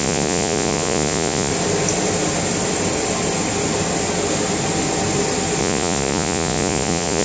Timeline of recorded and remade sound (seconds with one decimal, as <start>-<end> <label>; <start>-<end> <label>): 0.0-1.5 remade; 1.5-5.6 recorded; 5.6-7.2 remade